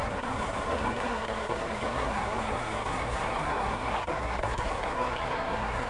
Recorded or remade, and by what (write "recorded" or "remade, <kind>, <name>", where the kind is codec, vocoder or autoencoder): remade, codec, SNAC